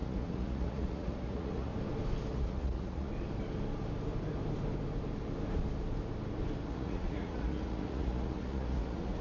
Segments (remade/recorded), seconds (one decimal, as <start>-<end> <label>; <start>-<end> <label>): 0.0-1.7 remade; 1.7-2.3 recorded; 2.3-3.1 remade; 3.1-6.7 recorded; 6.7-9.2 remade